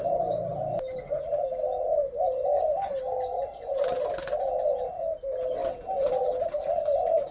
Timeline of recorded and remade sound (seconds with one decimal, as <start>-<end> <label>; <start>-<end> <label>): 0.0-7.3 recorded